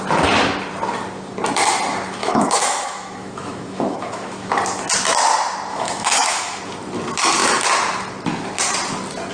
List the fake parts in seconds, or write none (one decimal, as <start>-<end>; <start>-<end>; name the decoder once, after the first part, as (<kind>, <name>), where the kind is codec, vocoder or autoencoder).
2.2-4.5 (autoencoder, DAC-VAE); 5.7-6.6